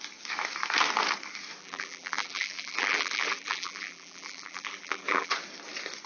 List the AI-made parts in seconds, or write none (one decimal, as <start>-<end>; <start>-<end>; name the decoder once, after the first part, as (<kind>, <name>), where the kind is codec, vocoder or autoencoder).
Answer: 1.6-5.3 (vocoder, BigVGAN v2)